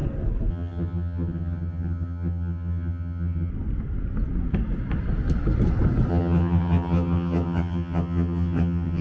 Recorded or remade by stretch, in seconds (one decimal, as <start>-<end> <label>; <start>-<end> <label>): 0.0-0.5 recorded; 0.5-3.5 remade; 3.5-6.1 recorded; 6.1-9.0 remade